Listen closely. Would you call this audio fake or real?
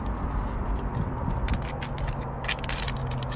real